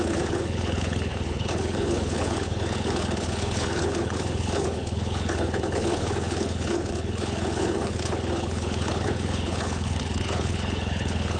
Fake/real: fake